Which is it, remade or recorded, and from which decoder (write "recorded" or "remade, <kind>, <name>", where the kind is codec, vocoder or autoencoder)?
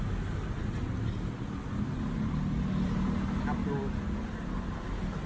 recorded